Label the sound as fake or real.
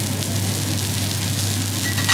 real